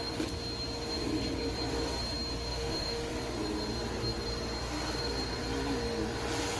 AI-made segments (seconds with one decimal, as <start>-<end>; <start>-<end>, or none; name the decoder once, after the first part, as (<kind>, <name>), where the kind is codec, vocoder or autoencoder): 2.5-3.1 (autoencoder, DAC-VAE)